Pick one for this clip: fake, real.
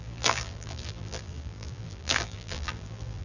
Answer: fake